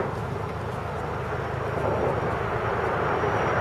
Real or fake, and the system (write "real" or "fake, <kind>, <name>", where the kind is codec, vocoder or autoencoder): real